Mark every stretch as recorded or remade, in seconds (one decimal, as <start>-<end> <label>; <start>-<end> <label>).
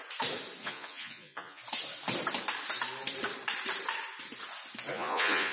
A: 0.0-0.6 recorded; 0.6-1.6 remade; 1.6-4.9 recorded; 4.9-5.5 remade